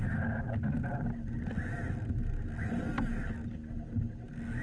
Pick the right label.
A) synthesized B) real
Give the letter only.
B